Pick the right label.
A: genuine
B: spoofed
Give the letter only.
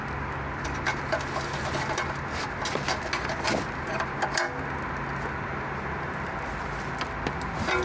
A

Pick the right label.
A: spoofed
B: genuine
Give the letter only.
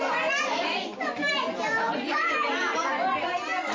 B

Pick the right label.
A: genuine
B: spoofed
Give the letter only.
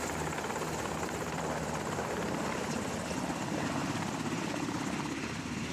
A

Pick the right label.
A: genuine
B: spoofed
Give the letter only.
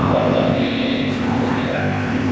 B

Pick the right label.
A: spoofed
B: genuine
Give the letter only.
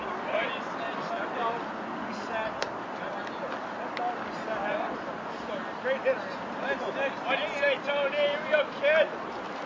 B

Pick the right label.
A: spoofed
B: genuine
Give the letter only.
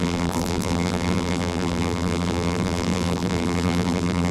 A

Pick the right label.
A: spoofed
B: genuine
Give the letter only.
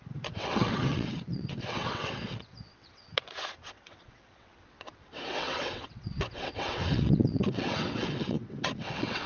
A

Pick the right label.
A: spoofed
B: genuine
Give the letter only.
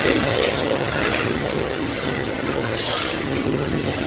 A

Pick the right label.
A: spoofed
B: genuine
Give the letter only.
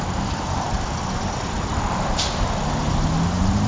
B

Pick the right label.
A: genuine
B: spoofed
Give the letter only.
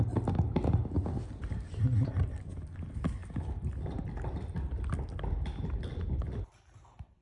A